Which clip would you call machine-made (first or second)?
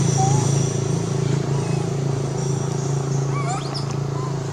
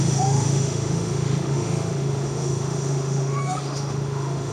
second